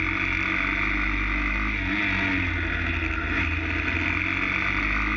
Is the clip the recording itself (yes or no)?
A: yes